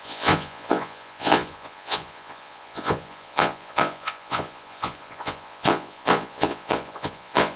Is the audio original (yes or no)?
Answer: no